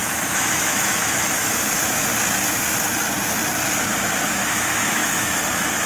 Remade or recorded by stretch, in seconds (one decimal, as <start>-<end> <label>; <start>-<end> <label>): 0.0-2.1 remade; 2.1-4.3 recorded; 4.3-5.9 remade